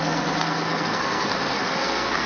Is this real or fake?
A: fake